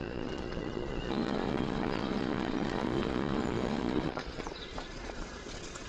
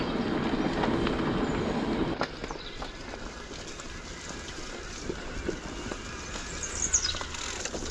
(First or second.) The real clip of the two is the second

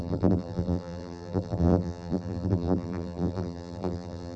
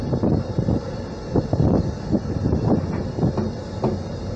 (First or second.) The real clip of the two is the second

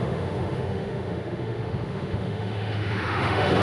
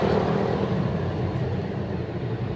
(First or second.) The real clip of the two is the second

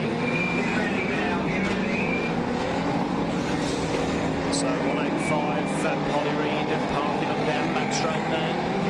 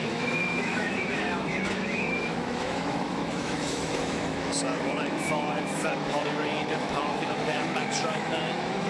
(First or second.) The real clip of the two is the first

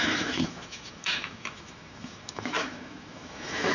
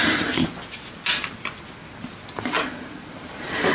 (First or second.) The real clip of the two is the second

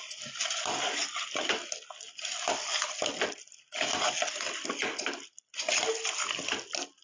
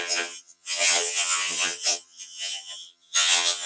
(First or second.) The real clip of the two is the first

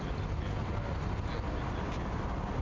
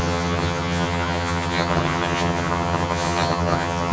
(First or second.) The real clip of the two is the first